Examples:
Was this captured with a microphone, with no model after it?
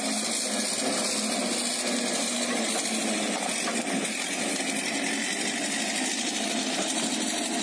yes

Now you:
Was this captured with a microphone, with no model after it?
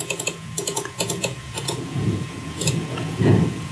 no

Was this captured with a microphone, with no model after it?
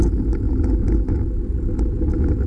yes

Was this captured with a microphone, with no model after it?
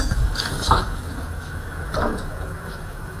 no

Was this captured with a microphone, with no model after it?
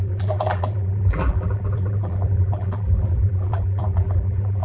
no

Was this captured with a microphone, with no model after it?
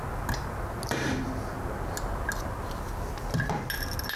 yes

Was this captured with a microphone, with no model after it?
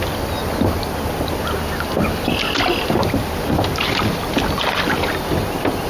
yes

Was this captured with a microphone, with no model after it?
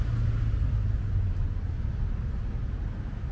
yes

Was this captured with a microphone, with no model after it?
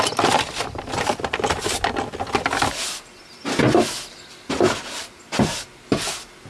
yes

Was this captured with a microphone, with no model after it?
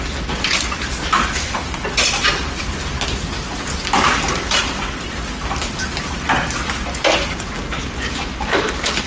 yes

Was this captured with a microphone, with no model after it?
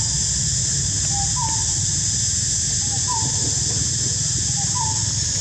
yes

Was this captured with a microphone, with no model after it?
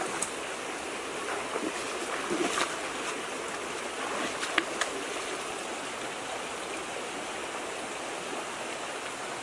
yes